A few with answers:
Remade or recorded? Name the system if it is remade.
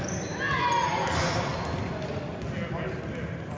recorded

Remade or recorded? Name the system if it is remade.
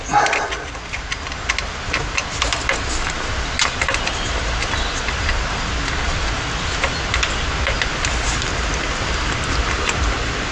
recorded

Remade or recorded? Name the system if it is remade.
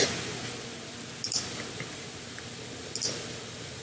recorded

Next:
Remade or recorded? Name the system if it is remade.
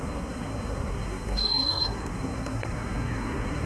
remade, codec, SNAC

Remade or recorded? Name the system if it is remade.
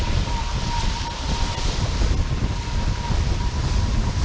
recorded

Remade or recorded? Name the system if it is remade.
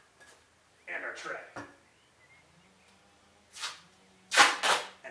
recorded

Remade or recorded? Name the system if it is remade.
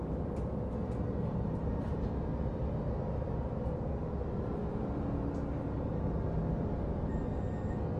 recorded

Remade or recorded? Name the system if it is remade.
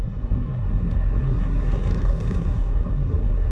remade, codec, SNAC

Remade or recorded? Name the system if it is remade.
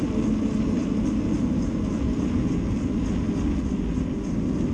recorded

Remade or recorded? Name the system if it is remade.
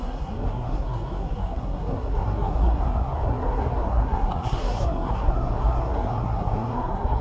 remade, codec, SNAC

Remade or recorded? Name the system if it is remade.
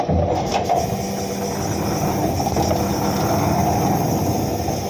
recorded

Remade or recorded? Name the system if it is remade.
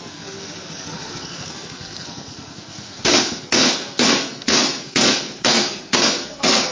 remade, codec, SNAC